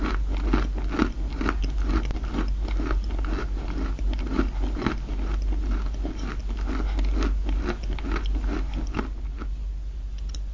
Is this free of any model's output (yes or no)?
yes